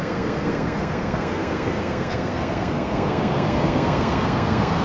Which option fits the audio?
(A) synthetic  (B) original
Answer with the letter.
A